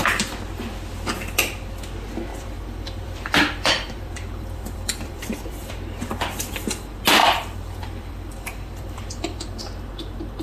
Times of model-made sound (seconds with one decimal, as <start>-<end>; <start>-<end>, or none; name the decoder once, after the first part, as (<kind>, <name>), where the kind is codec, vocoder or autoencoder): 2.3-5.7 (vocoder, BigVGAN v2); 7.2-9.6